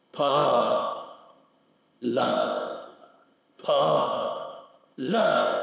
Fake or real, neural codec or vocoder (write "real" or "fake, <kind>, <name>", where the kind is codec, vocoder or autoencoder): fake, codec, ZipCodec